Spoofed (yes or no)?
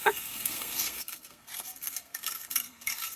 yes